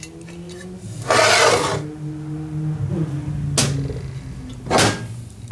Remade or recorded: recorded